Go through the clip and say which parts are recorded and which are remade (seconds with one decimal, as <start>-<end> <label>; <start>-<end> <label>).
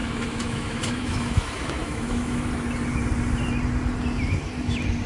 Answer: 0.0-2.5 remade; 2.5-5.1 recorded